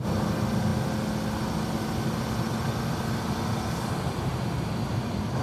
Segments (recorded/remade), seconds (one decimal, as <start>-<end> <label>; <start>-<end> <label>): 0.0-5.4 recorded